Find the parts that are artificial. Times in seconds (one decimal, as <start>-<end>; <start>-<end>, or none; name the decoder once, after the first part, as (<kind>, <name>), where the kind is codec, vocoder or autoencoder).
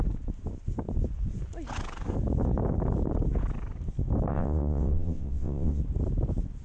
4.3-5.8 (vocoder, WaveNeXt)